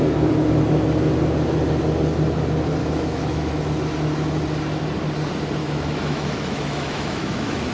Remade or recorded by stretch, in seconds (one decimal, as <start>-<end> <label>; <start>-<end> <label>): 0.0-2.8 recorded; 2.8-3.6 remade; 3.6-5.6 recorded; 5.6-7.7 remade